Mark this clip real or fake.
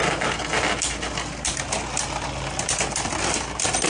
real